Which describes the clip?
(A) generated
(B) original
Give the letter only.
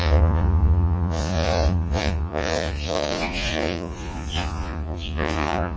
A